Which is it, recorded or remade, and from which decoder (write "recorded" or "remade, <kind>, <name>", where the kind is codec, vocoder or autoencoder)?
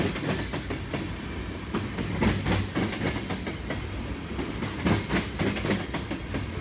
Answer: recorded